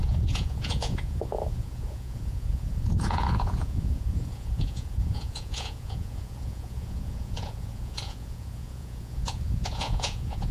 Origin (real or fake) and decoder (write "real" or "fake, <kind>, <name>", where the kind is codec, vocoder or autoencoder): fake, vocoder, Vocos